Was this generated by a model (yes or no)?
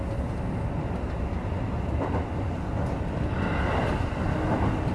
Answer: no